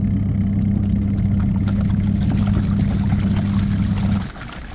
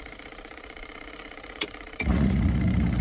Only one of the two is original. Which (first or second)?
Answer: first